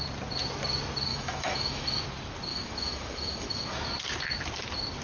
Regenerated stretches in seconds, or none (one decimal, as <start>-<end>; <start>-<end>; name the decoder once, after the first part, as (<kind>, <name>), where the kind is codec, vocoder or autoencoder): 1.1-2.0 (autoencoder, DAC-VAE); 2.5-3.7